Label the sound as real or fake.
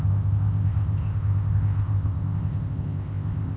fake